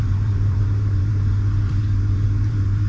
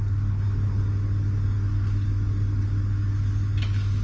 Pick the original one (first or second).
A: second